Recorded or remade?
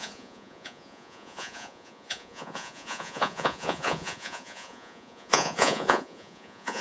remade